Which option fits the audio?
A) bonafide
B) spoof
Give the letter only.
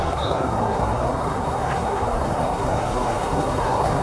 B